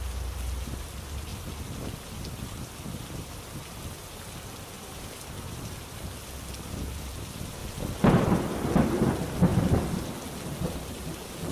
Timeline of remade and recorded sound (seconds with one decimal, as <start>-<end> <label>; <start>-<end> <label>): 0.0-7.6 remade; 7.6-8.1 recorded; 8.1-9.5 remade; 9.5-11.5 recorded